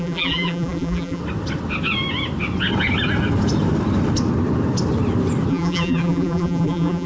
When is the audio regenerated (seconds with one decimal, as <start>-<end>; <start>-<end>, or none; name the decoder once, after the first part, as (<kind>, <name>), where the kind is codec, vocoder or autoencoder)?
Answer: 0.0-1.2 (vocoder, BigVGAN v2); 5.5-7.1

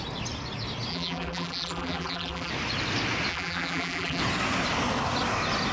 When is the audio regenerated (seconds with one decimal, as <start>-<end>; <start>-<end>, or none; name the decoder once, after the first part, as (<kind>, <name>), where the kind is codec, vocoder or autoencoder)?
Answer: 0.9-2.5 (vocoder, BigVGAN v2); 3.3-4.2

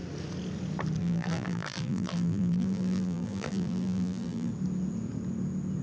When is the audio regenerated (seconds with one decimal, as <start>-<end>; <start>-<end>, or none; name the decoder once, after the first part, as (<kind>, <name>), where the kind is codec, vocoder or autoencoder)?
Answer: 1.0-4.5 (vocoder, BigVGAN v2)